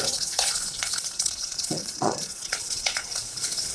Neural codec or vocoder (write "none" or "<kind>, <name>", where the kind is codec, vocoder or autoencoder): vocoder, Vocos